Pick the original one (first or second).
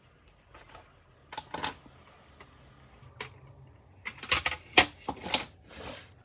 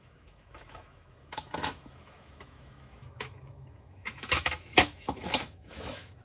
first